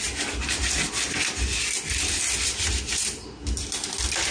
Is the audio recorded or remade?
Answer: recorded